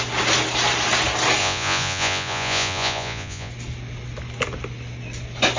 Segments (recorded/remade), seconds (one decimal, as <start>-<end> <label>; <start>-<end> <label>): 0.0-1.4 recorded; 1.4-3.5 remade; 3.5-5.6 recorded